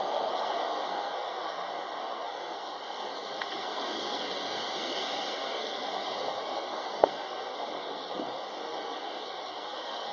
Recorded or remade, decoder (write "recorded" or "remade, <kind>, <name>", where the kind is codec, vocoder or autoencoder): remade, codec, SNAC